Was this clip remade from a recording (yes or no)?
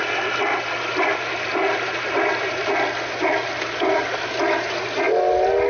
no